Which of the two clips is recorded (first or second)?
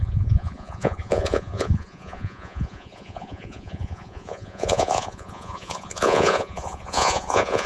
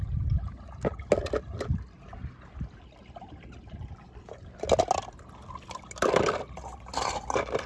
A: second